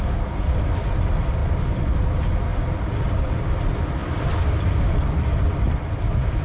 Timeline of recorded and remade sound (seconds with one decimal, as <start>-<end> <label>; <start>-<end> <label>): 0.0-1.4 recorded; 1.4-2.0 remade; 2.0-2.5 recorded; 2.5-3.4 remade; 3.4-4.0 recorded; 4.0-5.5 remade; 5.5-6.4 recorded